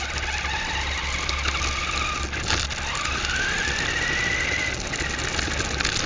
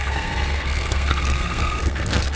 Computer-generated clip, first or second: second